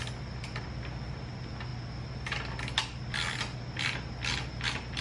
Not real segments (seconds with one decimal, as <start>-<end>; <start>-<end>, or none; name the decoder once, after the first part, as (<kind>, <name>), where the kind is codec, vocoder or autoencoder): none